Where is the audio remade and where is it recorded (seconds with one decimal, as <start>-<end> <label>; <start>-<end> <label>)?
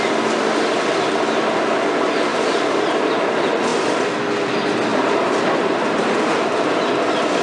0.0-2.3 recorded; 2.3-3.1 remade; 3.1-3.7 recorded; 3.7-4.5 remade; 4.5-4.9 recorded; 4.9-6.8 remade; 6.8-7.4 recorded